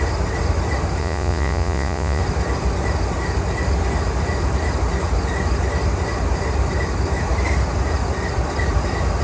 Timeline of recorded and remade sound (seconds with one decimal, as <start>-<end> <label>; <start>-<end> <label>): 0.0-1.0 recorded; 1.0-2.2 remade; 2.2-9.2 recorded